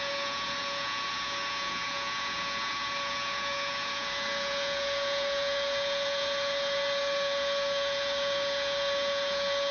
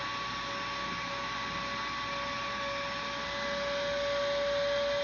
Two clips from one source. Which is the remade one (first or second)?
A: first